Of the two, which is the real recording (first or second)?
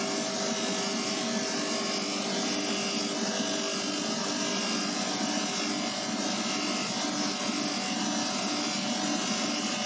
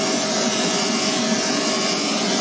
first